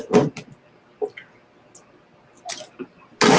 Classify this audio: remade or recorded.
recorded